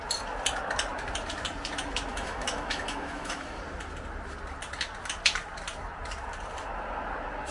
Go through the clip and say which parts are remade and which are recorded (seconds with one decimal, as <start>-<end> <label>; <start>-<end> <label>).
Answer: 0.0-2.1 recorded; 2.1-3.6 remade; 3.6-7.5 recorded